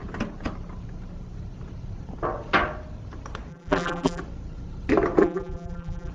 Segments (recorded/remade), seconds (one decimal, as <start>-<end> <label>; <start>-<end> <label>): 0.0-3.5 recorded; 3.5-4.2 remade; 4.2-5.2 recorded; 5.2-6.1 remade